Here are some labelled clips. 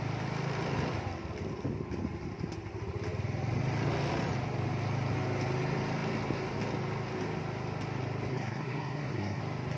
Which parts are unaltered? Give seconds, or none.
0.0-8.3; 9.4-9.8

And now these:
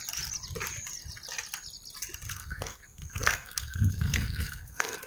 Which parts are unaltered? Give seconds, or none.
0.0-2.3

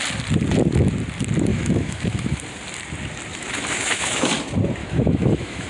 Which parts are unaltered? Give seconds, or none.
0.0-1.5; 2.4-3.4; 4.3-4.8

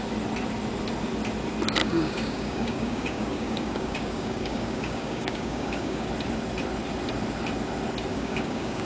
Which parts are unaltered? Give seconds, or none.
0.0-1.8; 6.1-8.1

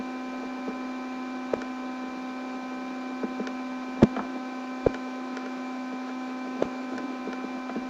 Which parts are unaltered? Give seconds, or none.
0.0-4.3; 7.2-7.9